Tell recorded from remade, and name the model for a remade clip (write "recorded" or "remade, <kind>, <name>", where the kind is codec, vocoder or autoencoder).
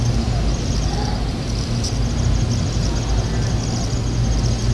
recorded